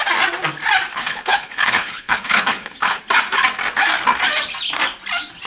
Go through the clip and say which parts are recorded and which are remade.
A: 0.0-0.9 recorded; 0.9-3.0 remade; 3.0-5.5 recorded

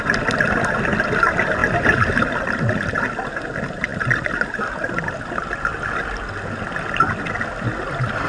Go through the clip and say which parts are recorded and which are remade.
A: 0.0-8.3 recorded